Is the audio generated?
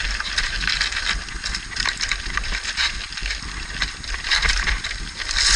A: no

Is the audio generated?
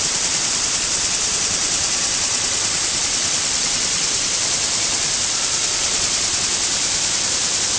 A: yes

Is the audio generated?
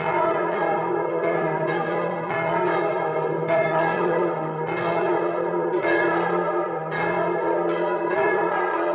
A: yes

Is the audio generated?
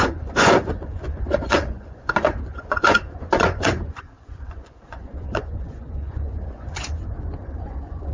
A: yes